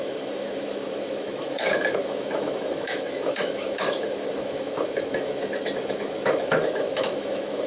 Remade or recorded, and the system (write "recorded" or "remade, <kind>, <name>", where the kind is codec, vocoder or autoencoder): remade, autoencoder, DAC-VAE